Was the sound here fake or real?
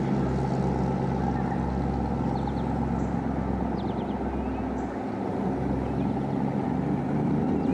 real